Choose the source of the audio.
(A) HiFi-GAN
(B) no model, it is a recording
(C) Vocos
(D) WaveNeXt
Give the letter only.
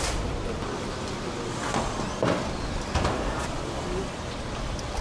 B